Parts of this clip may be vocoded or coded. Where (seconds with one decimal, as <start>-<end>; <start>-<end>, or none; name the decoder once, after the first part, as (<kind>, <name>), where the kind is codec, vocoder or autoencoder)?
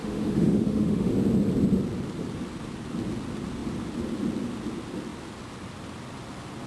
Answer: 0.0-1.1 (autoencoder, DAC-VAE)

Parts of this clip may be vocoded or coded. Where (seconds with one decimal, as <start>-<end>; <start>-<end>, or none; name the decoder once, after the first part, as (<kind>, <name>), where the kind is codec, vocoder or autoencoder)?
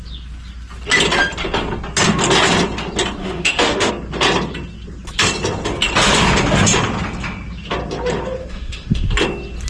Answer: 3.2-3.9 (autoencoder, DAC-VAE); 8.4-9.1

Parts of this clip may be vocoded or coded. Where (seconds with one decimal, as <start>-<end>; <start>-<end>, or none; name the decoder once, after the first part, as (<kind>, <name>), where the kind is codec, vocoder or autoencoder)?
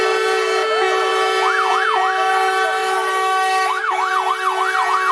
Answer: 2.8-4.1 (autoencoder, DAC-VAE)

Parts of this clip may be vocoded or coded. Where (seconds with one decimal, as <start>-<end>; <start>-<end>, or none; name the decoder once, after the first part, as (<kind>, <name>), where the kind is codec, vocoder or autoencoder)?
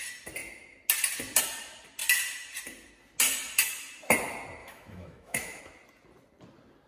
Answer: 4.6-5.6 (autoencoder, DAC-VAE)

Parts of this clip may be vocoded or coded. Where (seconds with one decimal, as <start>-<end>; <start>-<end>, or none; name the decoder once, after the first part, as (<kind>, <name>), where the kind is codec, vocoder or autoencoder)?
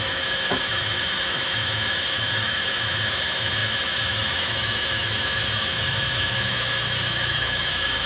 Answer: 0.0-8.1 (autoencoder, DAC-VAE)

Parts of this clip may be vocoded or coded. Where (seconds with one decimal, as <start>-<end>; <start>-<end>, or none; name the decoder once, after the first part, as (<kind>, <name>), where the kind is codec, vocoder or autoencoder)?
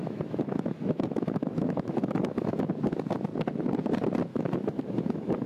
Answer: 0.0-2.7 (autoencoder, DAC-VAE); 4.3-5.5